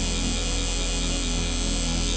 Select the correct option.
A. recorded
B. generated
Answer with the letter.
A